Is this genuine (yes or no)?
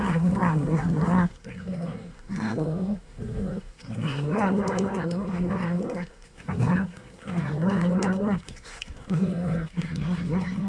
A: no